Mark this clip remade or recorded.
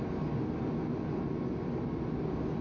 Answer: recorded